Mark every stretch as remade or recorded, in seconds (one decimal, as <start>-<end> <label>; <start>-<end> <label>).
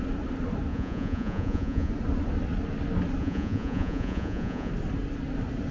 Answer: 0.0-0.7 recorded; 0.7-1.9 remade; 1.9-3.2 recorded; 3.2-4.7 remade; 4.7-5.7 recorded